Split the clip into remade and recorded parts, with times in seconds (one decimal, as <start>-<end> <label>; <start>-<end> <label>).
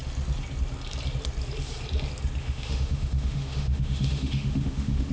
0.0-2.4 recorded; 2.4-5.1 remade